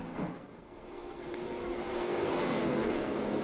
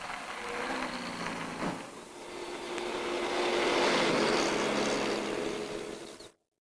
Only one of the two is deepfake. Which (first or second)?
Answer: first